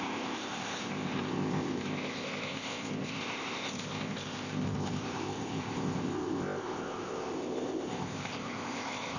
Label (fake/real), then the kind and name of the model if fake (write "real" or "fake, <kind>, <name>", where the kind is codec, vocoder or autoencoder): fake, codec, ZipCodec